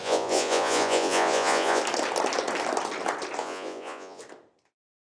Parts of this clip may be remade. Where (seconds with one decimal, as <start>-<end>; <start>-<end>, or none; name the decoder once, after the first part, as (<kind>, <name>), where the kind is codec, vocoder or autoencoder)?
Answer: 0.0-1.8 (vocoder, Vocos); 3.4-4.2